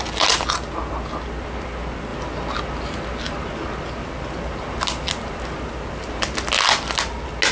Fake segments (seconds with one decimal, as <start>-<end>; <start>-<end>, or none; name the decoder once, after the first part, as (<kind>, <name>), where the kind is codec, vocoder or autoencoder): none